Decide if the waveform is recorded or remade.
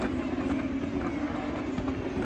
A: recorded